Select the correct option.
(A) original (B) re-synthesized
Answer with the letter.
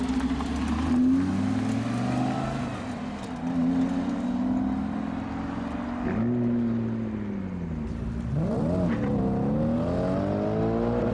A